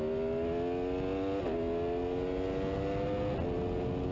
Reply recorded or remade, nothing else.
recorded